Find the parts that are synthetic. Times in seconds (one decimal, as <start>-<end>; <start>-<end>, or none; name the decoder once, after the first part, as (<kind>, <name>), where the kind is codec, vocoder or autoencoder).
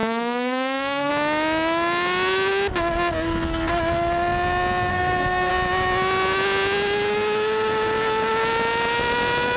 0.0-1.1 (codec, SNAC); 4.9-5.5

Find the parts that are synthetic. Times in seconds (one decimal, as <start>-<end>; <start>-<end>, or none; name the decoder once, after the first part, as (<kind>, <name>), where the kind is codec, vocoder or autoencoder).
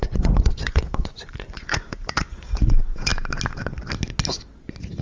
0.0-3.1 (vocoder, Vocos)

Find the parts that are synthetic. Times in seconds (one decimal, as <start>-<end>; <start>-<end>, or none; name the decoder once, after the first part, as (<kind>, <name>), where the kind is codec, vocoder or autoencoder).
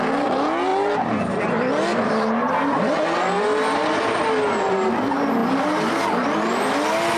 none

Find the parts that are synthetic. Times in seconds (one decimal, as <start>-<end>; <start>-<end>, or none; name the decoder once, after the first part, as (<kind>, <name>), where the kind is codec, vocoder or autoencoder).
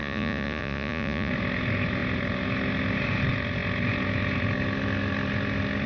0.0-1.3 (vocoder, Vocos)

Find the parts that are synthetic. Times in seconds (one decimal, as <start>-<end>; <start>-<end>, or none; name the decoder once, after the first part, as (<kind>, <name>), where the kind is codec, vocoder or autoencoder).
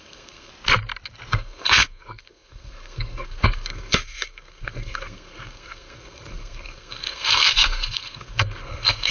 0.0-0.5 (codec, SNAC); 1.3-9.1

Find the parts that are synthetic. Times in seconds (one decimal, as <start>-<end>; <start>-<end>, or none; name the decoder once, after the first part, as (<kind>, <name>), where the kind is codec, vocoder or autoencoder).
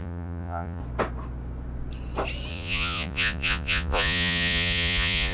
0.0-0.8 (vocoder, Vocos); 2.5-5.3